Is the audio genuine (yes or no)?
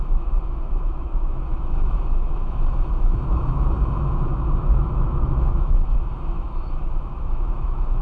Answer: no